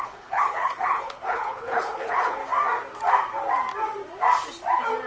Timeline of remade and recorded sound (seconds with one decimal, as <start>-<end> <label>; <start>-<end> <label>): 0.0-2.4 remade; 2.4-5.1 recorded